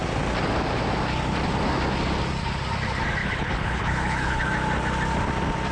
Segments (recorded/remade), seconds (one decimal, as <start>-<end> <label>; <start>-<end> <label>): 0.0-3.2 recorded; 3.2-4.4 remade; 4.4-5.7 recorded